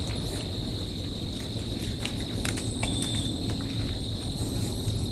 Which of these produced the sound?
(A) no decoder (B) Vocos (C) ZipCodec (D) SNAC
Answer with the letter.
A